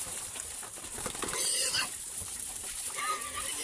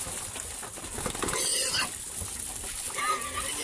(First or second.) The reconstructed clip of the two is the first